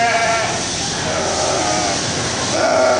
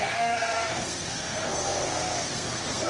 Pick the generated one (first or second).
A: second